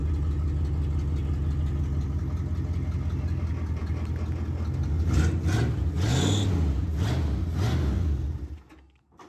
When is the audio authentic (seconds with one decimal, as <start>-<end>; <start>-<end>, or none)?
0.0-9.3